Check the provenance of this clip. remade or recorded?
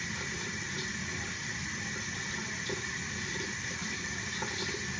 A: remade